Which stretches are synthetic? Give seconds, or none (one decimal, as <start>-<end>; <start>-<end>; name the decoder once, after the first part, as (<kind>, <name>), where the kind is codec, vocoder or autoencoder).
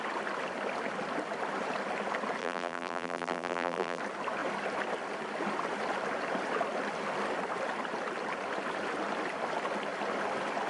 2.4-4.0 (vocoder, BigVGAN v2)